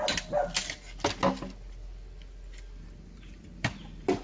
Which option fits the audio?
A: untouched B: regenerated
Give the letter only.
A